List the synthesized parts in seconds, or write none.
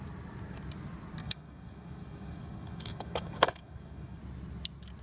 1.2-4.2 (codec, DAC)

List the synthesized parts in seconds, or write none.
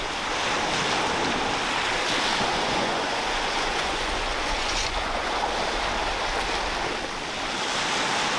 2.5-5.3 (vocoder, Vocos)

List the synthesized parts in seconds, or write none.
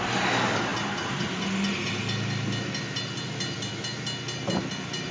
none